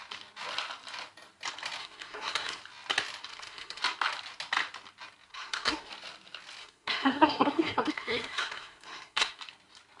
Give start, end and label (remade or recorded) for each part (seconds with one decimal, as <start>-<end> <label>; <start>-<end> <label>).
0.0-1.8 recorded; 1.8-2.6 remade; 2.6-3.3 recorded; 3.3-3.8 remade; 3.8-5.3 recorded; 5.3-5.9 remade; 5.9-6.6 recorded; 6.6-9.4 remade; 9.4-10.0 recorded